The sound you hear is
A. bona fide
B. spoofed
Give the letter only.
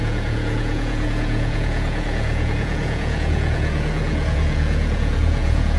B